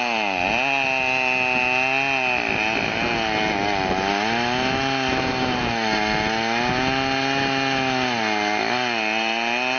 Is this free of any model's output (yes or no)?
yes